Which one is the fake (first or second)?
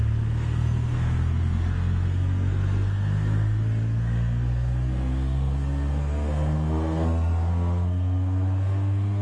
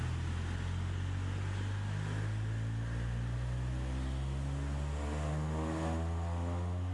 first